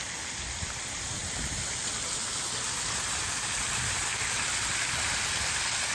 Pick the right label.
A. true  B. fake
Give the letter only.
A